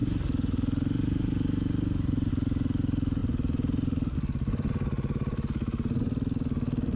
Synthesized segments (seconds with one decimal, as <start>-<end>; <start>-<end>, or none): 0.0-2.3